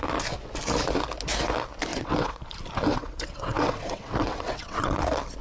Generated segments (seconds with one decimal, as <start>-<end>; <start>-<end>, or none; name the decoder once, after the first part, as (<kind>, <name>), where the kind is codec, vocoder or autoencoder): 1.9-2.4 (vocoder, WaveNeXt); 2.9-5.0